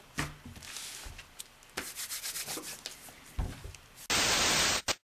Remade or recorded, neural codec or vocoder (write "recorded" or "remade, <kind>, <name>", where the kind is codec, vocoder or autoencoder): recorded